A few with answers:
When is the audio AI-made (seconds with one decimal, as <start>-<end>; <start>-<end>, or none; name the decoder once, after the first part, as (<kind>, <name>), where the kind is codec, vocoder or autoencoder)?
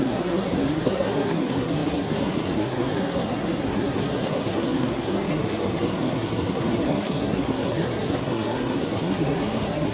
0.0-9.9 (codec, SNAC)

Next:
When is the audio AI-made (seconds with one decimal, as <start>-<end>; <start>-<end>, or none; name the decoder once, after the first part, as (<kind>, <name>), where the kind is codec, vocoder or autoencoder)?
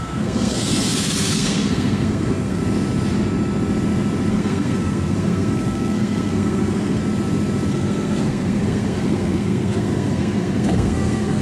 0.0-2.6 (codec, SNAC); 4.3-7.0; 7.7-11.4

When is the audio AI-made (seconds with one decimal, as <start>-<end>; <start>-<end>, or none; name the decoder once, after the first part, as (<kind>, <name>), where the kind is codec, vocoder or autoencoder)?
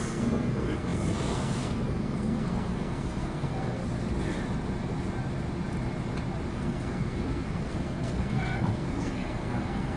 0.0-3.8 (codec, SNAC); 6.5-10.0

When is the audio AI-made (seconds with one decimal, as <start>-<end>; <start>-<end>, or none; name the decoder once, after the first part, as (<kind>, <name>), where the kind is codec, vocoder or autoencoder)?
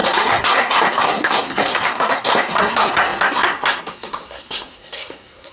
0.0-5.5 (codec, SNAC)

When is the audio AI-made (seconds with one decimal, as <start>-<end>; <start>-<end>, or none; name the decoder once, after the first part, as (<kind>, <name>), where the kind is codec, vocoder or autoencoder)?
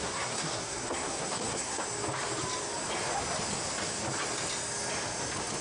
0.0-1.8 (codec, SNAC)